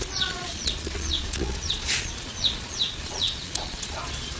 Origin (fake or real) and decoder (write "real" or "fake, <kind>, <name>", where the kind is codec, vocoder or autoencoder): fake, vocoder, Vocos